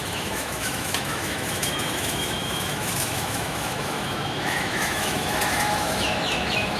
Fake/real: fake